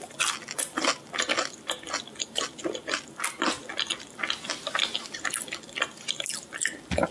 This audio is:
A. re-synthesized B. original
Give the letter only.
B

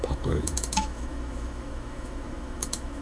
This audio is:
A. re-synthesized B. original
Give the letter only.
A